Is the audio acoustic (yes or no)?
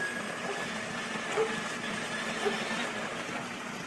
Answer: yes